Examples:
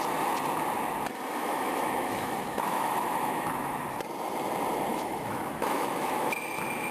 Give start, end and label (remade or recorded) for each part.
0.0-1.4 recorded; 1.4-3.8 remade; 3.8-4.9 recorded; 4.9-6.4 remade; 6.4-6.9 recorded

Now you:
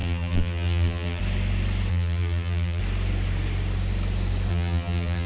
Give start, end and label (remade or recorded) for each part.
0.0-1.2 remade; 1.2-1.9 recorded; 1.9-2.8 remade; 2.8-4.5 recorded; 4.5-5.3 remade

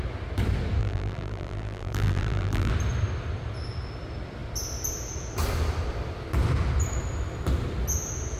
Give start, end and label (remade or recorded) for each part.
0.0-0.8 recorded; 0.8-2.7 remade; 2.7-8.4 recorded

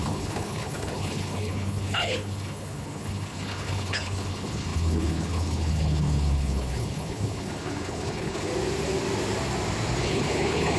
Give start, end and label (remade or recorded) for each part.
0.0-8.5 remade; 8.5-10.0 recorded; 10.0-10.8 remade

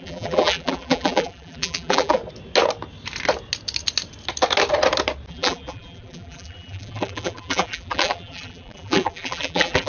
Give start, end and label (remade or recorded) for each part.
0.0-2.2 remade; 2.2-5.3 recorded; 5.3-9.9 remade

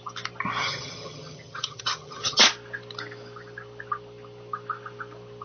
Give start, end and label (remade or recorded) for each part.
0.0-0.6 recorded; 0.6-2.4 remade; 2.4-5.4 recorded